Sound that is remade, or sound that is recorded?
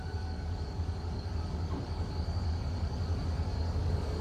remade